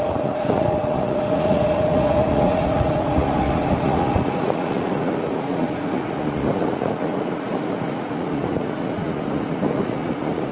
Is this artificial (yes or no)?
yes